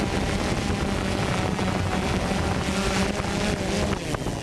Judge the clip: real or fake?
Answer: real